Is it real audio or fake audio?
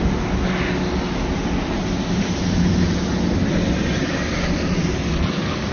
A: real